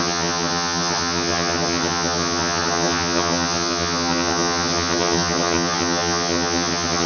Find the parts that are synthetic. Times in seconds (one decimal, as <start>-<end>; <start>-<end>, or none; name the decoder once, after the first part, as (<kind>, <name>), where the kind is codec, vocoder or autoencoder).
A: 0.0-7.1 (vocoder, HiFi-GAN)